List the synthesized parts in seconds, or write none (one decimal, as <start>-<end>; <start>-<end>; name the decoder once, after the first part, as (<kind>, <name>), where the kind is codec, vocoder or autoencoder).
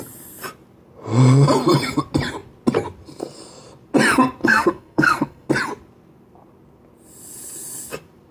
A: 4.4-5.5 (codec, SNAC)